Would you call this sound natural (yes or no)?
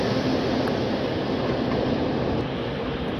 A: yes